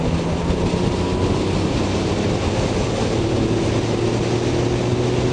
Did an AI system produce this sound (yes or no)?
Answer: no